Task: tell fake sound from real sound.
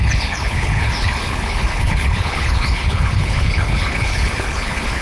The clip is fake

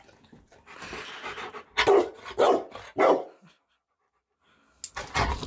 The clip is real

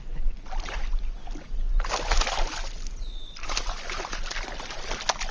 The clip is real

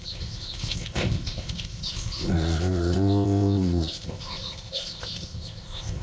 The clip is fake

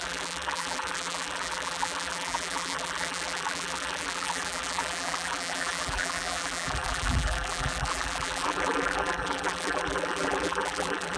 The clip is fake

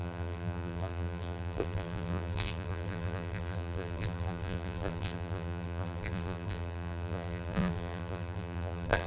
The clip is fake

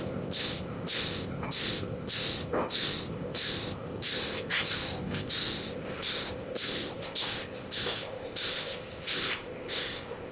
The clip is fake